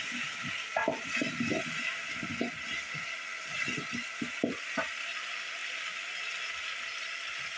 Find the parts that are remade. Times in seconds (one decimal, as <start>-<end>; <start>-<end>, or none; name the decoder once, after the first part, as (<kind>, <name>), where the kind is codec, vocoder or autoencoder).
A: 0.8-2.1 (vocoder, BigVGAN v2)